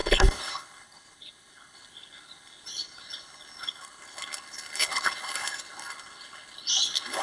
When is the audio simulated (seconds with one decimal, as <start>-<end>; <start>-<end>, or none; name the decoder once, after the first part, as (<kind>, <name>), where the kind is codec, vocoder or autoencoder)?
0.0-7.2 (codec, HILCodec)